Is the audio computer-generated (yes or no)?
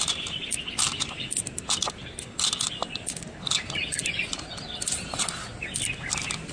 no